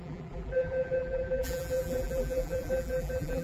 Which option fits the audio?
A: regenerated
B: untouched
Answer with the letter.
A